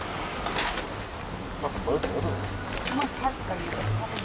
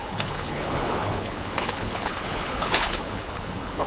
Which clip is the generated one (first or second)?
second